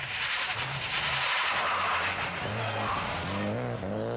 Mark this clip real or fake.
real